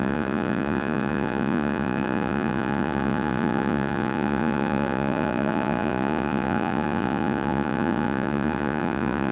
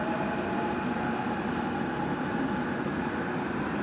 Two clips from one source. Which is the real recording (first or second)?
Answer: second